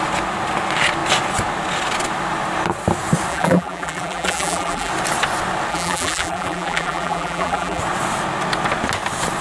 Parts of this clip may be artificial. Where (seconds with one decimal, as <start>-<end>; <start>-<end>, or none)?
3.3-4.9; 5.7-7.8